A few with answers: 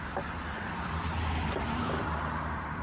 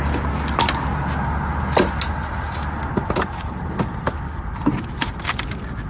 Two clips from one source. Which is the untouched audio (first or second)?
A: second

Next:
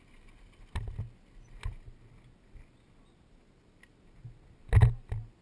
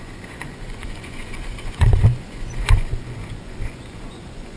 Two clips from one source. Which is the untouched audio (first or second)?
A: first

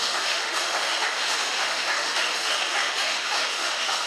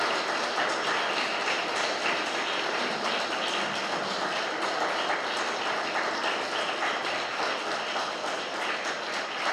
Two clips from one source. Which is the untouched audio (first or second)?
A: second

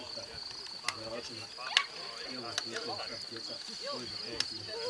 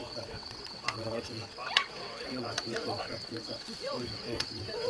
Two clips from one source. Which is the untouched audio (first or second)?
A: first